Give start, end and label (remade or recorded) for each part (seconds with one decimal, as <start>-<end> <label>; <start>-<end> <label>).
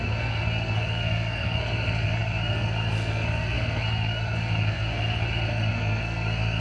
0.0-6.6 remade